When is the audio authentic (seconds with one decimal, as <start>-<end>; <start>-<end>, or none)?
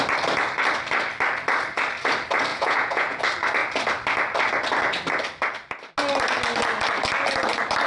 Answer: 0.0-2.5; 3.2-7.9